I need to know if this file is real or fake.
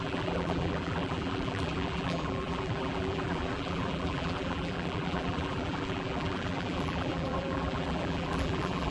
fake